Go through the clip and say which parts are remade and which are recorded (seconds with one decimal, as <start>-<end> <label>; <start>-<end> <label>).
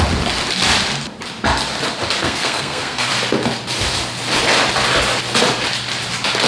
0.0-2.2 recorded; 2.2-3.1 remade; 3.1-6.5 recorded